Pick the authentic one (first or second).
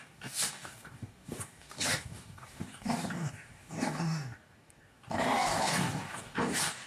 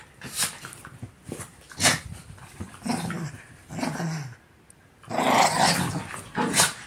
second